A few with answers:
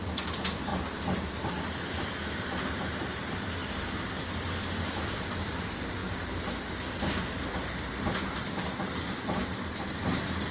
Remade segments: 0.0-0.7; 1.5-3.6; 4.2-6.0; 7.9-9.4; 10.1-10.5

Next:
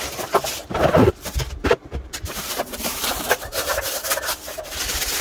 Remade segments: 0.6-3.7

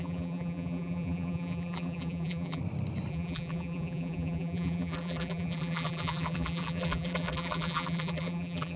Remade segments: 0.0-2.6; 3.1-8.8

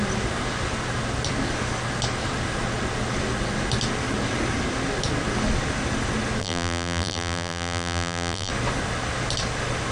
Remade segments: 6.4-8.5

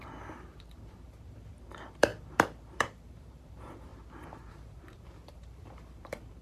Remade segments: 0.0-3.9; 4.5-6.4

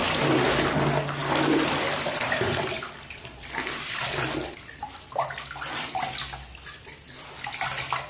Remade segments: 1.2-4.2